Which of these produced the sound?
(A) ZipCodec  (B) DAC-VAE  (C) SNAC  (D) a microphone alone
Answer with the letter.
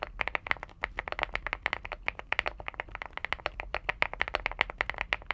D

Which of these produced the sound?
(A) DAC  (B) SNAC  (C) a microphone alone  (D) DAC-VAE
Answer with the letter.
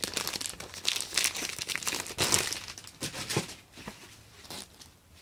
C